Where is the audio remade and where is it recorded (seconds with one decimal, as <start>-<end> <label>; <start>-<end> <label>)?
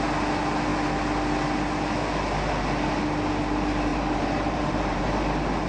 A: 0.0-3.9 recorded; 3.9-5.1 remade; 5.1-5.7 recorded